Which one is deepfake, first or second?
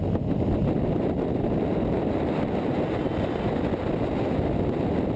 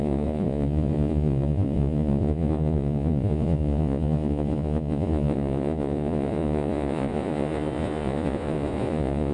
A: second